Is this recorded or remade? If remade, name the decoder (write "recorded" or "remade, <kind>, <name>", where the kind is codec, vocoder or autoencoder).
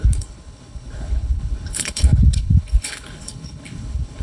remade, codec, HILCodec